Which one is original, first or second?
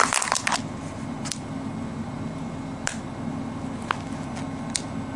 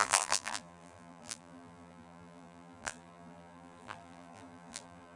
first